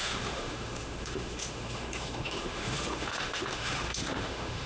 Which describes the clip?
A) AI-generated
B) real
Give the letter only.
A